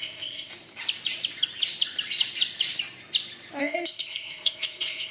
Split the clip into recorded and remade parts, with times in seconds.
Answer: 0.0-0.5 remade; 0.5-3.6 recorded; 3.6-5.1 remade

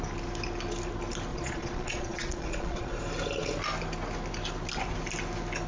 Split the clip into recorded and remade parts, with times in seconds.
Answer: 0.0-1.3 recorded; 1.3-3.0 remade; 3.0-5.7 recorded